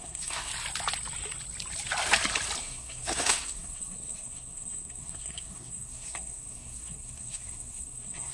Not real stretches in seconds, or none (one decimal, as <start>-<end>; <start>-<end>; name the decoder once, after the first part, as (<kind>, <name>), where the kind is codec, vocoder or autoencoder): 0.0-0.5 (codec, SNAC); 2.6-8.3